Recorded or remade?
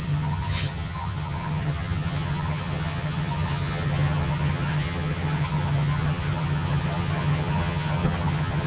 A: remade